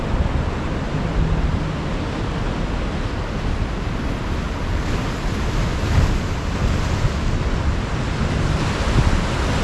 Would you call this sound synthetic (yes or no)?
no